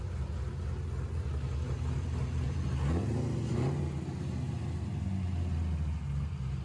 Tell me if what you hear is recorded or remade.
recorded